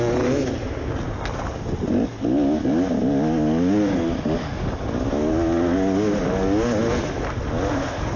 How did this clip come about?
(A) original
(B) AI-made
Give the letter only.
A